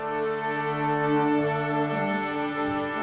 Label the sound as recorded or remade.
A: recorded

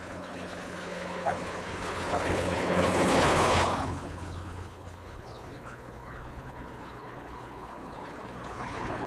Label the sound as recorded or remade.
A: remade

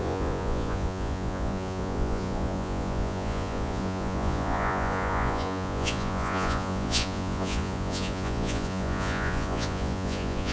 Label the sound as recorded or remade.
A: remade